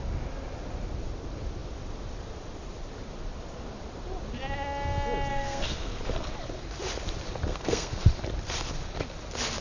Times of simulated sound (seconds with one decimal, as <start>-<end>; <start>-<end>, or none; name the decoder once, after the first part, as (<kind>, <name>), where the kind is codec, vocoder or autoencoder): 5.3-5.9 (codec, SNAC); 7.5-8.0